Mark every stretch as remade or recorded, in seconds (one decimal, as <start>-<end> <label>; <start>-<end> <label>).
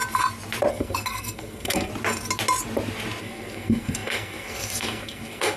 0.0-0.7 recorded; 0.7-1.9 remade; 1.9-3.2 recorded; 3.2-5.6 remade